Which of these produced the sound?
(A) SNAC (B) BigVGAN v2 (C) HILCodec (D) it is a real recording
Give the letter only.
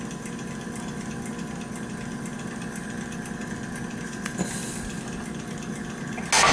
D